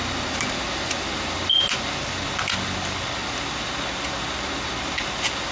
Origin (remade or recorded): recorded